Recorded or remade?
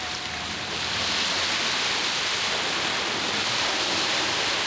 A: recorded